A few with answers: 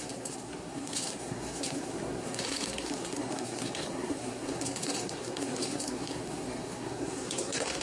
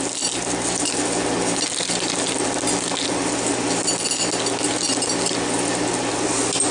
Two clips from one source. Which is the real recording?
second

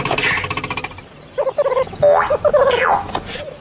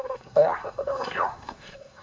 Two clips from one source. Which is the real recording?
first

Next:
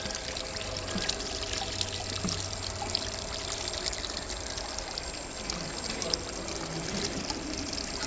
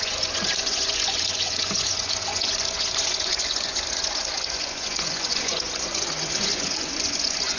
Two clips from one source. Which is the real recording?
first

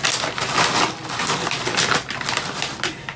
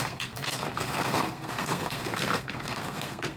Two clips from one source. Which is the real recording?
first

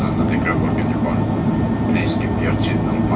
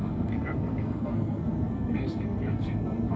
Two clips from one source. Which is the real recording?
first